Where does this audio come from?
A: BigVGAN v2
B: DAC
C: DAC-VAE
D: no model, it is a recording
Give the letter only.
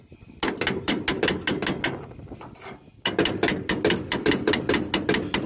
D